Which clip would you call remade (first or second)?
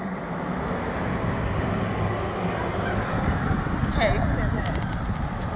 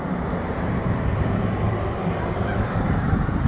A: second